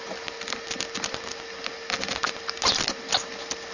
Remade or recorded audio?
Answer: recorded